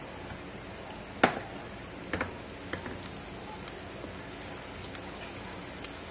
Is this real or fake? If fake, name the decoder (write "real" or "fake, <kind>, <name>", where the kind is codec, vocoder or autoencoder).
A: real